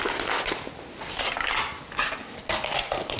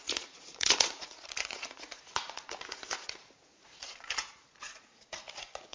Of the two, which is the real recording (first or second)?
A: first